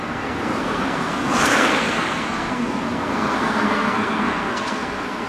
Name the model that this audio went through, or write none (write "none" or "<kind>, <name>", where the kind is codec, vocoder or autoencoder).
codec, SNAC